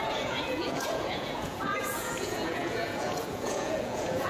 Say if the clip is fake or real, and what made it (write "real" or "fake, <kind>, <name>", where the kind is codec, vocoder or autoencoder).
fake, vocoder, Vocos